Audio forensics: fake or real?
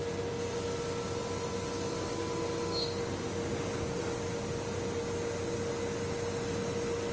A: real